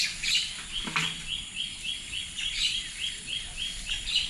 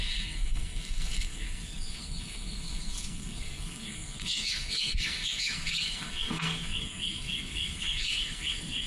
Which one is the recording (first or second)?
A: first